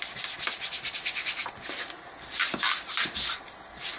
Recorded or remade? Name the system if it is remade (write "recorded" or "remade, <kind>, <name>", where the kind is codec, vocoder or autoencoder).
recorded